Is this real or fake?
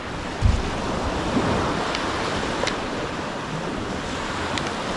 real